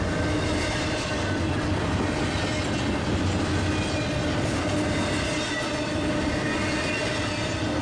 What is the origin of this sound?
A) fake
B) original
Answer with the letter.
B